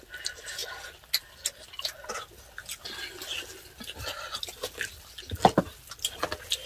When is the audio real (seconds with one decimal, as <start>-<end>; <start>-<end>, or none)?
0.0-6.7